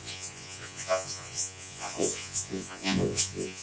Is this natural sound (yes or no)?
no